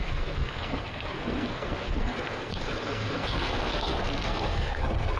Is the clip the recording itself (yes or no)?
no